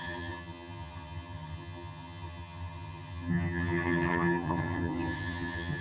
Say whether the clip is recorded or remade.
remade